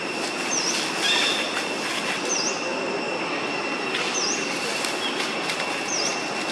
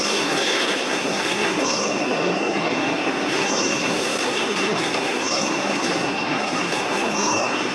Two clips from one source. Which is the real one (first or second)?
first